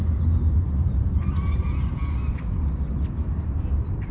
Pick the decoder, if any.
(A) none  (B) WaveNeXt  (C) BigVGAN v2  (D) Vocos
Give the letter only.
A